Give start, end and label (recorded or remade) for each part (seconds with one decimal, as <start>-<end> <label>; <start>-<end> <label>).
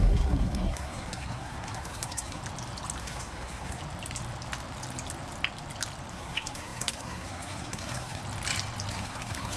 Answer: 0.0-2.4 remade; 2.4-3.0 recorded; 3.0-3.8 remade; 3.8-6.1 recorded; 6.1-8.2 remade; 8.2-8.9 recorded; 8.9-9.6 remade